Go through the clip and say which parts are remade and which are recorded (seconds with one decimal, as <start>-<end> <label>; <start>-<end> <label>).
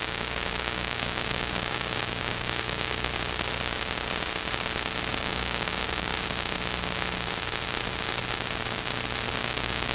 0.0-3.1 remade; 3.1-5.2 recorded; 5.2-6.1 remade; 6.1-9.4 recorded; 9.4-9.9 remade